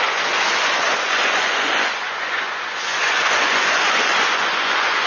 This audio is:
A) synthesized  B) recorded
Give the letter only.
A